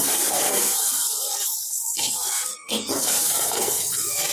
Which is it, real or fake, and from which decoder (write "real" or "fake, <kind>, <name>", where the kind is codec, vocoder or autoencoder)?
fake, codec, SNAC